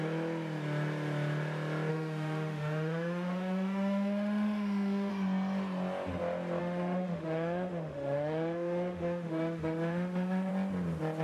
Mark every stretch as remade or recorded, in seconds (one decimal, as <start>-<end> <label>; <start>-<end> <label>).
0.0-1.9 recorded; 1.9-5.1 remade; 5.1-6.6 recorded; 6.6-10.5 remade; 10.5-11.2 recorded